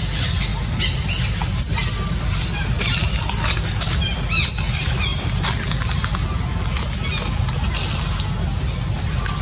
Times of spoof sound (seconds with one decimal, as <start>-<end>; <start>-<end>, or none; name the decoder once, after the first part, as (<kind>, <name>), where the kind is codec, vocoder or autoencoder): none